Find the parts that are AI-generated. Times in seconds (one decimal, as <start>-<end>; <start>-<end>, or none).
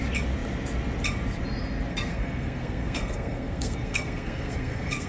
1.9-5.1